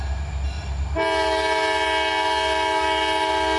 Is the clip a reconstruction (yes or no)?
no